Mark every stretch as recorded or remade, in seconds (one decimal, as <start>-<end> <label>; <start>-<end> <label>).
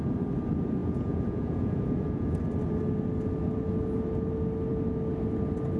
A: 0.0-0.8 recorded; 0.8-2.4 remade; 2.4-5.8 recorded